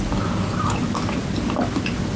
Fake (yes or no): no